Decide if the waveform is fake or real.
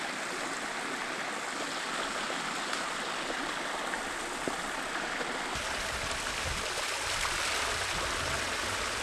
real